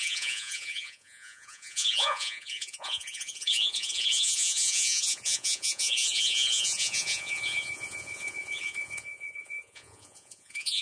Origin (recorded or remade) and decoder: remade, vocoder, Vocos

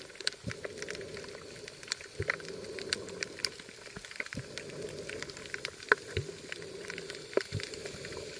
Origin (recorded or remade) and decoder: recorded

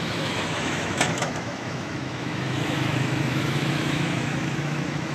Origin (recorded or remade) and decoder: remade, autoencoder, DAC-VAE